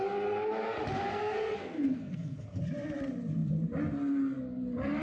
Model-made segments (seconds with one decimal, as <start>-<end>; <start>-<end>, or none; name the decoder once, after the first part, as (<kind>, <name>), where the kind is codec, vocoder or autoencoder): 1.1-2.6 (codec, SNAC)